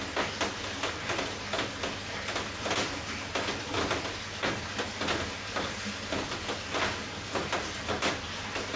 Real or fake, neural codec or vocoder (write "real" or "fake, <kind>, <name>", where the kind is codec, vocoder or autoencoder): real